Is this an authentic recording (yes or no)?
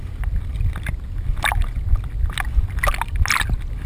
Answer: yes